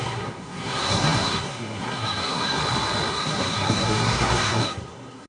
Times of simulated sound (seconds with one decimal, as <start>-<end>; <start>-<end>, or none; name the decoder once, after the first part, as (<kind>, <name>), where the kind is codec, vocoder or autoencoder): 0.0-2.6 (codec, SNAC); 3.1-5.3